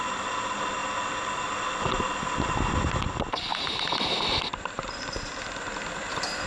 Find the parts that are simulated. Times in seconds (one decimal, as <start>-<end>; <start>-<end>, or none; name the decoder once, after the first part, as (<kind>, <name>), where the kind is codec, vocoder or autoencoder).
3.5-5.1 (vocoder, BigVGAN v2)